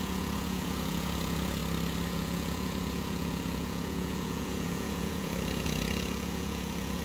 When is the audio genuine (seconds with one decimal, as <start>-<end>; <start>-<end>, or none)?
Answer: 1.6-2.1